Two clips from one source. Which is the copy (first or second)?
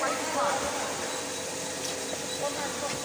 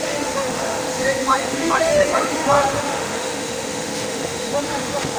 second